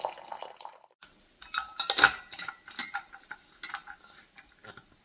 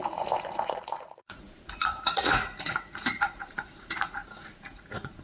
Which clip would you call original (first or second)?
first